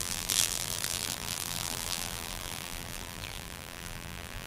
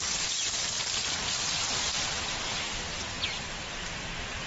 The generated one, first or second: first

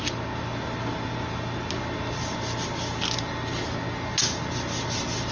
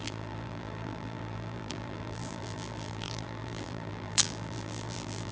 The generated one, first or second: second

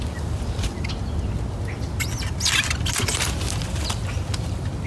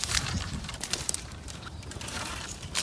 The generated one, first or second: second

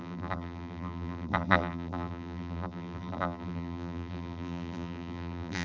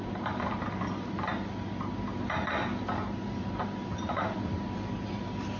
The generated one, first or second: first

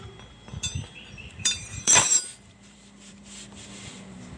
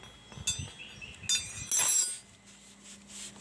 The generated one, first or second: first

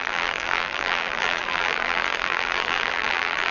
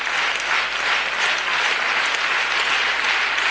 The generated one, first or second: first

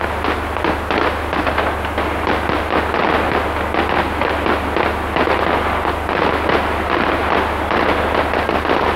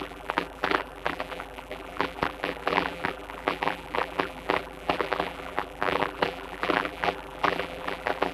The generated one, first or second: second